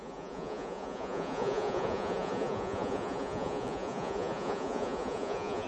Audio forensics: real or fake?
fake